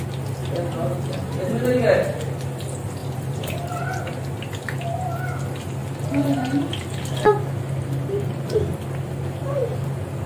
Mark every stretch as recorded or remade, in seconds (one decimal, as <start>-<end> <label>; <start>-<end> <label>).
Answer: 0.0-0.4 recorded; 0.4-1.8 remade; 1.8-3.0 recorded; 3.0-4.0 remade; 4.0-10.3 recorded